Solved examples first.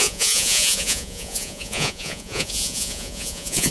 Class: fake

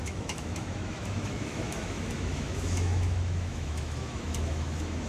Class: fake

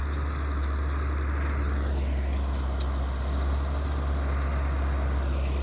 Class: real